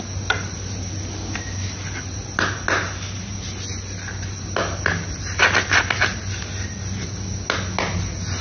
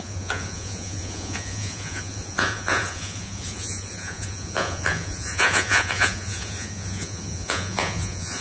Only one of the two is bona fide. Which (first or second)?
first